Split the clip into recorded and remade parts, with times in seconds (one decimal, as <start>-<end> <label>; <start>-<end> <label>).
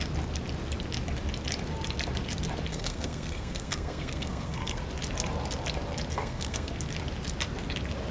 0.0-2.7 recorded; 2.7-4.8 remade; 4.8-6.1 recorded; 6.1-6.7 remade; 6.7-8.1 recorded